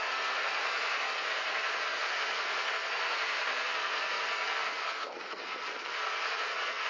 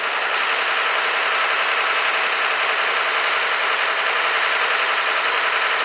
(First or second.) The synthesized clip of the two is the first